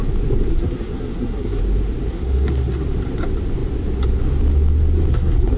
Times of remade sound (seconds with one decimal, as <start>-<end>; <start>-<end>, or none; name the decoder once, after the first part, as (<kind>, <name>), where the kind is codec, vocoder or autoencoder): 0.5-1.6 (codec, SNAC); 2.1-2.8; 5.1-5.6